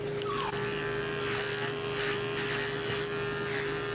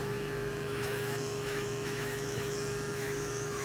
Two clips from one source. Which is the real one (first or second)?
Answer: first